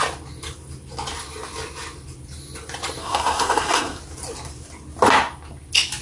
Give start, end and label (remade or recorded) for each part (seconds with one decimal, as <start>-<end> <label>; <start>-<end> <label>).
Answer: 0.0-3.0 recorded; 3.0-4.0 remade; 4.0-6.0 recorded